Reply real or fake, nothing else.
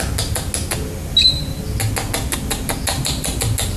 real